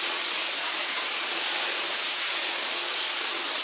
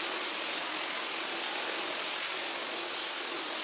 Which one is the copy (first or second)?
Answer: first